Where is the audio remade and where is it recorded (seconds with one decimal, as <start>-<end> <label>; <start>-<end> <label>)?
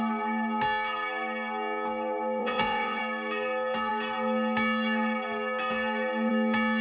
0.0-2.4 recorded; 2.4-3.0 remade; 3.0-6.8 recorded